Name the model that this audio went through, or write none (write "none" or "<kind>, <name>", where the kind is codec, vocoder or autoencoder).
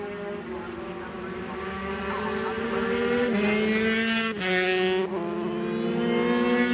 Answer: none